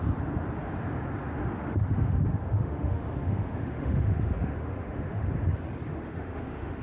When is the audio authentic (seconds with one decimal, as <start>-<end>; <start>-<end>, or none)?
0.0-1.4; 5.2-5.9